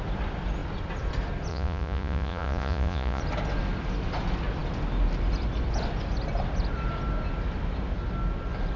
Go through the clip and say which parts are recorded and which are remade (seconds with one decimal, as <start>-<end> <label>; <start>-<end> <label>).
0.0-1.5 recorded; 1.5-3.2 remade; 3.2-8.8 recorded